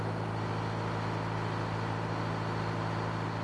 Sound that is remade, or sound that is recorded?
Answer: recorded